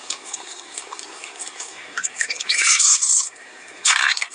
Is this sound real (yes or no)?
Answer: no